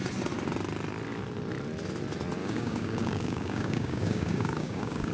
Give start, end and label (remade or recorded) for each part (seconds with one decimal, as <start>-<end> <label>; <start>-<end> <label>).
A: 0.0-2.4 recorded; 2.4-5.1 remade